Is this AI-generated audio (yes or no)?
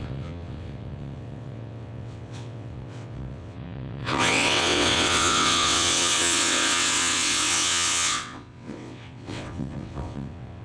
yes